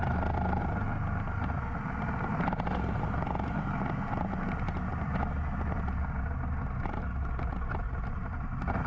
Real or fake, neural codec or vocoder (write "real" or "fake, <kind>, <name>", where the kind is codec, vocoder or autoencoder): real